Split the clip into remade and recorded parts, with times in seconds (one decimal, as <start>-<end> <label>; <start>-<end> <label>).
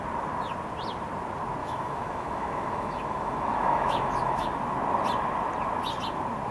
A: 0.0-1.6 recorded; 1.6-4.5 remade; 4.5-6.5 recorded